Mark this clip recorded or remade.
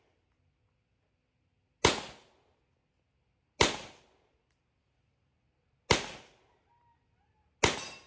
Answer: recorded